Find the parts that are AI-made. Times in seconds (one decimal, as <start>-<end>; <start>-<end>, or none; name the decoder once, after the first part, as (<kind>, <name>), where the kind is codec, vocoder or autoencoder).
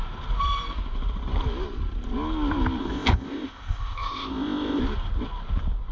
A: 2.8-4.8 (codec, ZipCodec)